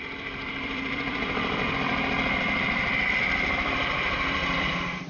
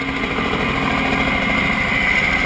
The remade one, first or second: first